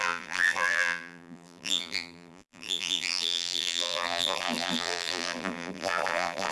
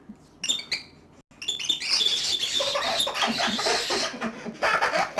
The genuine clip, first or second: second